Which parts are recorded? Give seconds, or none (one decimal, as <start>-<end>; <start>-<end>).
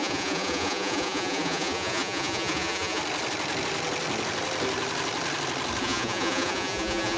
3.0-5.8